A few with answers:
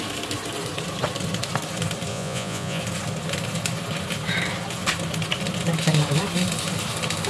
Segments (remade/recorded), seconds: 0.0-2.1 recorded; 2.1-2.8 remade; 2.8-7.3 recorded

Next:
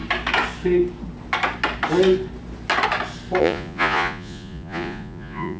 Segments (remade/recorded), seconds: 0.0-3.4 recorded; 3.4-5.6 remade

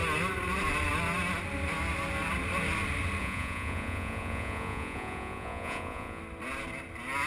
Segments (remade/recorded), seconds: 0.0-3.2 recorded; 3.2-6.2 remade; 6.2-7.3 recorded

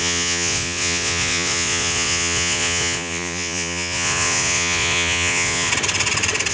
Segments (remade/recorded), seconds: 0.0-5.7 remade; 5.7-6.5 recorded

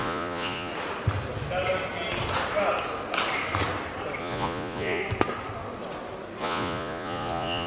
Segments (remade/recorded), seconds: 0.0-0.7 remade; 0.7-4.2 recorded; 4.2-5.0 remade; 5.0-6.4 recorded; 6.4-7.7 remade

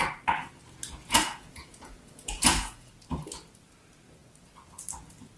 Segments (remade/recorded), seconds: 0.0-1.0 recorded; 1.0-2.9 remade; 2.9-5.4 recorded

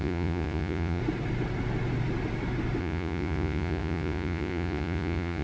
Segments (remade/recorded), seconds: 0.0-1.0 remade; 1.0-2.8 recorded; 2.8-5.4 remade